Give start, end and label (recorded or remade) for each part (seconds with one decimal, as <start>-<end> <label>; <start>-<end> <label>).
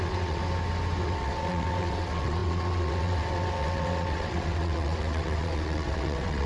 0.0-0.4 remade; 0.4-1.0 recorded; 1.0-6.5 remade